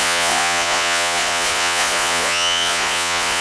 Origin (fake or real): fake